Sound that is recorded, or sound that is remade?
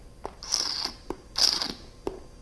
recorded